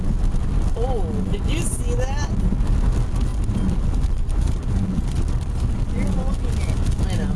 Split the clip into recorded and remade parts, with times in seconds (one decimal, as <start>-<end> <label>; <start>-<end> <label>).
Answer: 0.0-7.4 recorded